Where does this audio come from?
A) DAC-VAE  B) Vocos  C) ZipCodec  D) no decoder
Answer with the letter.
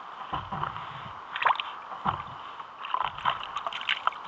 D